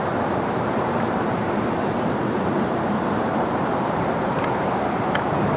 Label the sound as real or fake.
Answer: fake